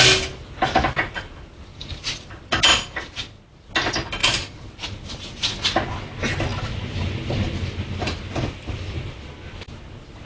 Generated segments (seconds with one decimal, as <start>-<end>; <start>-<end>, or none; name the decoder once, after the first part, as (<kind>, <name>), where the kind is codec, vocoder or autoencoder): 1.7-2.2 (vocoder, BigVGAN v2); 4.2-5.4; 6.5-9.3